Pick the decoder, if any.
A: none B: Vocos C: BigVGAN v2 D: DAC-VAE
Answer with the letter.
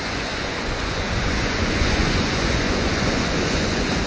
B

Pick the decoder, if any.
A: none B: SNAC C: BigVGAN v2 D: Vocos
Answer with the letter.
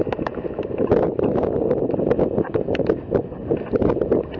A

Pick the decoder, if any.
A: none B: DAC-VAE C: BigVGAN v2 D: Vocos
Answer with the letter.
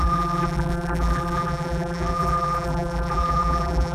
C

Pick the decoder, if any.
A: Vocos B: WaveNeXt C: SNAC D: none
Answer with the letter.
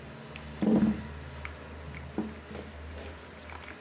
D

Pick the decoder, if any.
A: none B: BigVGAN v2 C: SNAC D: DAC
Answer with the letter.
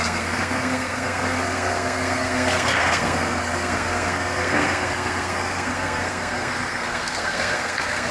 C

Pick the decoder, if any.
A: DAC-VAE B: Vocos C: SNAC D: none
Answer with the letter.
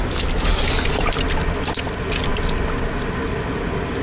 D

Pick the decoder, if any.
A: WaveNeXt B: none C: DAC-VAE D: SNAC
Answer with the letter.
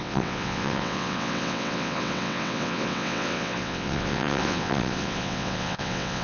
A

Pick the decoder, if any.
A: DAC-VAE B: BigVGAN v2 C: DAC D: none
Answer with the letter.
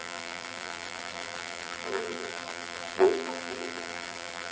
B